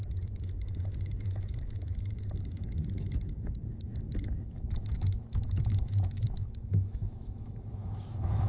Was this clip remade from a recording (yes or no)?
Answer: yes